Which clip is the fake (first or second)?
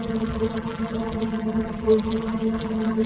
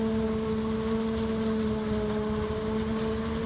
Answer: first